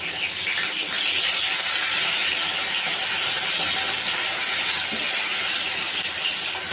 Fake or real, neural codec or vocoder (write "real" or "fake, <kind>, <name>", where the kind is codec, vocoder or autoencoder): real